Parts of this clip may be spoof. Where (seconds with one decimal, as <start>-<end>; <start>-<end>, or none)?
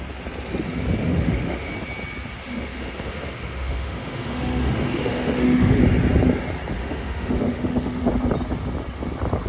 1.0-1.7; 2.4-5.8; 6.8-8.0